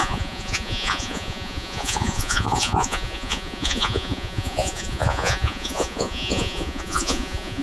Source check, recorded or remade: remade